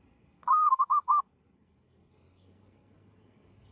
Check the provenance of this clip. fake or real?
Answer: fake